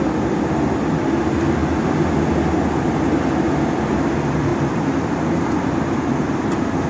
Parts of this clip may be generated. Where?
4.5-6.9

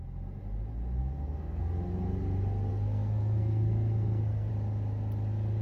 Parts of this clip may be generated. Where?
1.0-1.6; 2.7-4.5

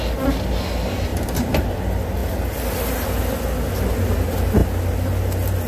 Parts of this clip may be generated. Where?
none

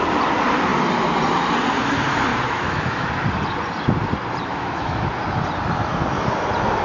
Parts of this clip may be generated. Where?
2.3-3.1; 4.5-5.0

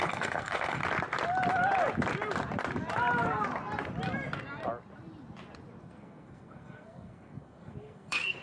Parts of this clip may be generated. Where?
0.0-0.8; 5.8-8.4

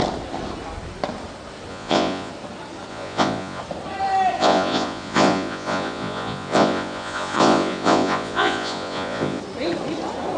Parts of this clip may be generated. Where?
1.7-2.3; 2.9-3.6; 4.4-9.4